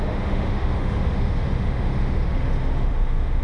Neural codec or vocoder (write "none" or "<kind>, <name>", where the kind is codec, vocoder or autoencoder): autoencoder, DAC-VAE